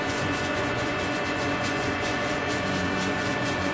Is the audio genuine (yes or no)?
no